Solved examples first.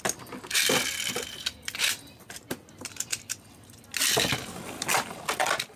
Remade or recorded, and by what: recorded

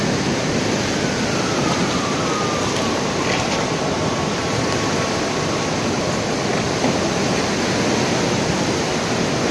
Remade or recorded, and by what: recorded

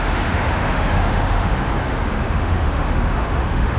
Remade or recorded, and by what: remade, autoencoder, DAC-VAE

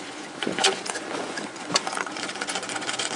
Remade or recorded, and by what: remade, vocoder, Vocos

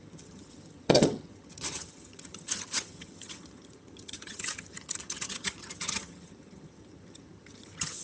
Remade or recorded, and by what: remade, vocoder, HiFi-GAN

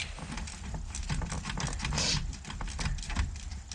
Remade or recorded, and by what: recorded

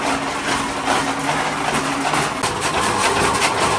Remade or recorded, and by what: recorded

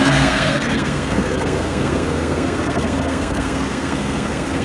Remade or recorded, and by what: remade, codec, SNAC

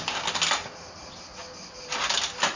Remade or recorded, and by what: recorded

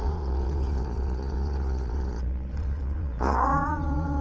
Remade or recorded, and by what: remade, vocoder, Vocos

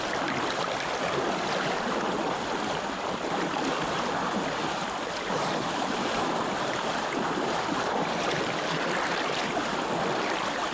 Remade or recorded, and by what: recorded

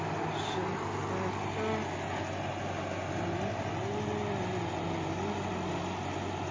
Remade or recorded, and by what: recorded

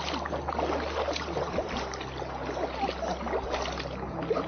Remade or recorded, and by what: recorded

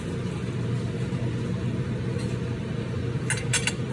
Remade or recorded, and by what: recorded